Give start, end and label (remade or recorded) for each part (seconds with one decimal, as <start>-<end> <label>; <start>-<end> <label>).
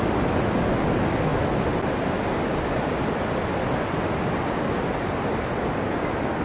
0.0-6.4 recorded